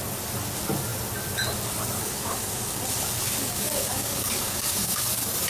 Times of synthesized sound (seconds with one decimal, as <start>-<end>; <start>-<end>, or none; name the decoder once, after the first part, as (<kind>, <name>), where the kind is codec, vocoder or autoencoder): 2.0-2.8 (codec, DAC); 3.4-5.1